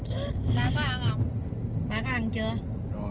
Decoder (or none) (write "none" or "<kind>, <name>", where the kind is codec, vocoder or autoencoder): none